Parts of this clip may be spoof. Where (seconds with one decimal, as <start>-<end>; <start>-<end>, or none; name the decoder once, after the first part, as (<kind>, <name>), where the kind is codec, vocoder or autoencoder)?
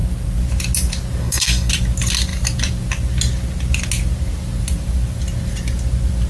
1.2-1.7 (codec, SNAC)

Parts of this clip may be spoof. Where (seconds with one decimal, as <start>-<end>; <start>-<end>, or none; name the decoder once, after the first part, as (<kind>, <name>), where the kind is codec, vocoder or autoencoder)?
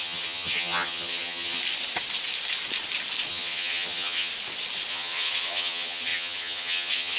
0.0-1.6 (vocoder, HiFi-GAN); 3.3-4.3; 4.9-7.2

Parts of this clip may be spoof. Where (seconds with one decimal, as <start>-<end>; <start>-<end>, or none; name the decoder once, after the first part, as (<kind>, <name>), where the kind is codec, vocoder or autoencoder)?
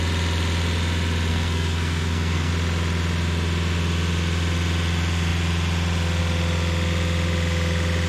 1.3-2.5 (codec, SNAC)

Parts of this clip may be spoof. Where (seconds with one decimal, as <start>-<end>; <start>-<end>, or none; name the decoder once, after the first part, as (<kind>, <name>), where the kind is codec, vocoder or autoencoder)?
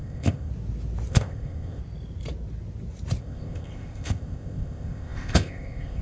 0.0-0.5 (codec, ZipCodec); 1.1-1.8; 3.2-6.0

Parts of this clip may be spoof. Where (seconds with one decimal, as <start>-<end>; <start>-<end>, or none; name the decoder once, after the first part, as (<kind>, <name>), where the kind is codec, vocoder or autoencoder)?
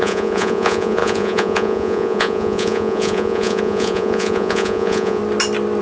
0.0-5.2 (vocoder, Vocos)